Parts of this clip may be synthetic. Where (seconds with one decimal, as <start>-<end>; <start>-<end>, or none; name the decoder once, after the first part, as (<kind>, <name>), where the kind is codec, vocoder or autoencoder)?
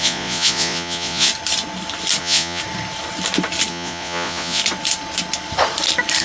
0.0-1.3 (vocoder, Vocos); 2.2-2.6; 3.7-4.6